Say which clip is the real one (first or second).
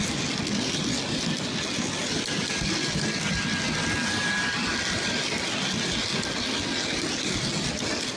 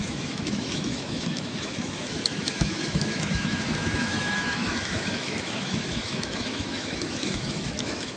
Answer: first